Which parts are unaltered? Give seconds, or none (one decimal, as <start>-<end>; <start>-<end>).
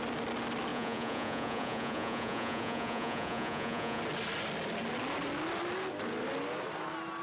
0.0-0.7; 4.0-7.2